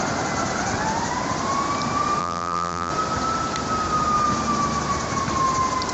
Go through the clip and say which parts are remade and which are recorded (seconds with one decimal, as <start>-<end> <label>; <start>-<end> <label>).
0.0-2.2 recorded; 2.2-2.9 remade; 2.9-5.9 recorded

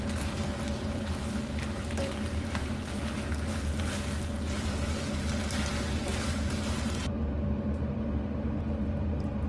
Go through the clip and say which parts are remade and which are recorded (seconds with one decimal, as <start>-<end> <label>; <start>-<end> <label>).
0.0-9.5 recorded

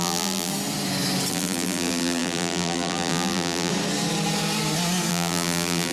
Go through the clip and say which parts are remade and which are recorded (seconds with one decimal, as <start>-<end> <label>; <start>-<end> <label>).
0.0-0.5 remade; 0.5-1.3 recorded; 1.3-3.7 remade; 3.7-5.1 recorded; 5.1-5.9 remade

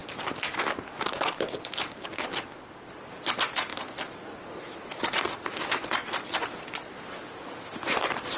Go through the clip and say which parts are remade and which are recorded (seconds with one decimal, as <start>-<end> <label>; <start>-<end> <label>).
0.0-1.4 recorded; 1.4-3.7 remade; 3.7-7.7 recorded; 7.7-8.4 remade

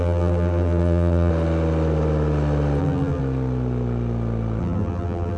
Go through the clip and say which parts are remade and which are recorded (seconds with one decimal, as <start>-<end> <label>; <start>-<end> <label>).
0.0-1.3 remade; 1.3-2.8 recorded; 2.8-3.2 remade; 3.2-4.6 recorded; 4.6-5.4 remade

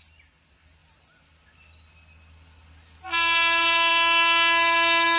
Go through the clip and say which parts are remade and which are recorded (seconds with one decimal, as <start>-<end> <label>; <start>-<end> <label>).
0.0-5.2 recorded